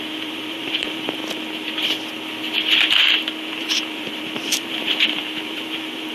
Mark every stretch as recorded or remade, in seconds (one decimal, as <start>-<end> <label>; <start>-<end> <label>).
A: 0.0-1.2 remade; 1.2-3.5 recorded; 3.5-6.1 remade